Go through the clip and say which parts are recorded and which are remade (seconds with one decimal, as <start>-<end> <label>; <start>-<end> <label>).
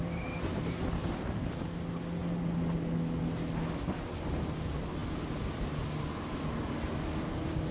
0.0-7.7 recorded